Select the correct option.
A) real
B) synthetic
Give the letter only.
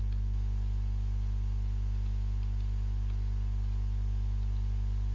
A